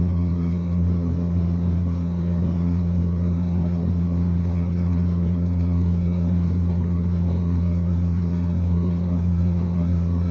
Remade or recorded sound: remade